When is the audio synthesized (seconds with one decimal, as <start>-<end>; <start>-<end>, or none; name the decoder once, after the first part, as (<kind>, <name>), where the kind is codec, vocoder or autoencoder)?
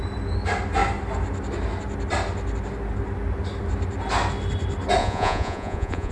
5.0-6.1 (vocoder, Vocos)